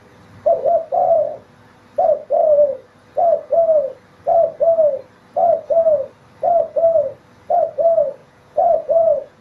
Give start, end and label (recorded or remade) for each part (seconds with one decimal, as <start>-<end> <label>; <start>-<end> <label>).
0.0-8.2 recorded; 8.2-9.4 remade